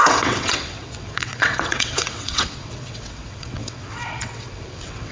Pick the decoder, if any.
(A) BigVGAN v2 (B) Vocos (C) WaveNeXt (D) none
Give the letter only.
C